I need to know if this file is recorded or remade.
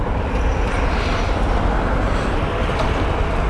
recorded